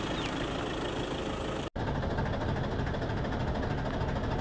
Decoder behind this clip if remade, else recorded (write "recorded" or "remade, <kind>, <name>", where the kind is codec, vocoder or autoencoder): recorded